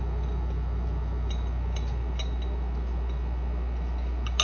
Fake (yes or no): no